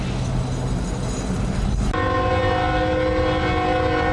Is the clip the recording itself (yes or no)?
yes